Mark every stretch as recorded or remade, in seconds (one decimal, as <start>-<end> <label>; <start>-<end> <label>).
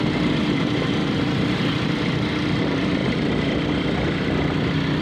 0.0-1.0 recorded; 1.0-2.6 remade; 2.6-5.0 recorded